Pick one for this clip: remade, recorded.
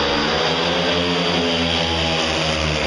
recorded